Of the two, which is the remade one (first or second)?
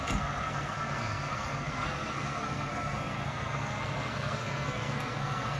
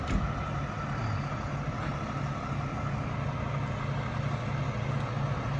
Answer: first